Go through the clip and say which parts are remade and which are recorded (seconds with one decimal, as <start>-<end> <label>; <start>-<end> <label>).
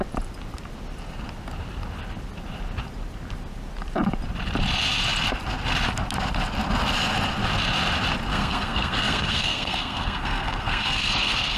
0.0-8.3 recorded; 8.3-11.6 remade